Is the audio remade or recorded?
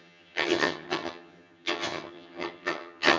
remade